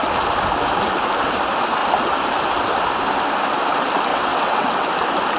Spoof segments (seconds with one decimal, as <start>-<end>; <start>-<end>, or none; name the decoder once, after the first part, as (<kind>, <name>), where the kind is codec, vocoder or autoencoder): 4.1-4.9 (vocoder, WaveNeXt)